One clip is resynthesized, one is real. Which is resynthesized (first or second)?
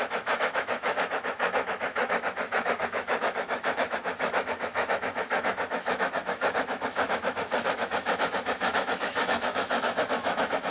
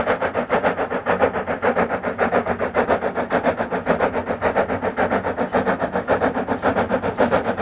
first